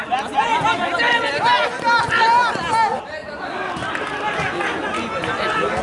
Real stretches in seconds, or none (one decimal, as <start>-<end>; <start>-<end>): 0.0-5.8